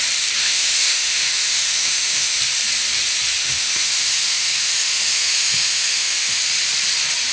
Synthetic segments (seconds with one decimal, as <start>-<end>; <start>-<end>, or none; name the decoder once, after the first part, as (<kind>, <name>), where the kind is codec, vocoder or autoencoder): 0.4-2.4 (autoencoder, DAC-VAE); 3.4-6.4